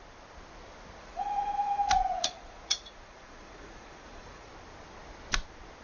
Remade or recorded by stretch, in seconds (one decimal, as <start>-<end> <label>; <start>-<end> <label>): 0.0-1.0 recorded; 1.0-4.5 remade; 4.5-5.8 recorded